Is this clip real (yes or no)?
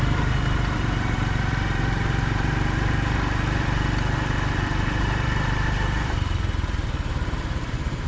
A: no